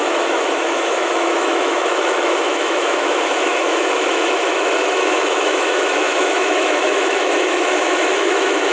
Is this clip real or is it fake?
fake